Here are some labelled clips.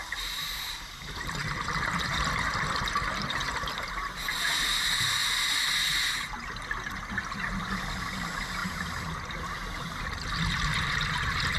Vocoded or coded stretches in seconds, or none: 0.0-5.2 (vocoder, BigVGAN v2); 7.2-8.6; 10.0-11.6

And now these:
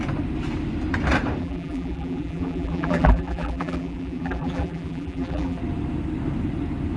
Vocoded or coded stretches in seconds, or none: 1.4-5.6 (vocoder, BigVGAN v2)

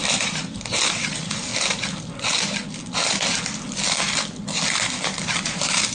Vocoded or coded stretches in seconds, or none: 0.0-1.5 (vocoder, BigVGAN v2); 5.0-5.9

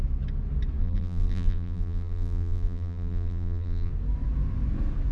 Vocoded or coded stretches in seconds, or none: 0.8-3.9 (vocoder, BigVGAN v2)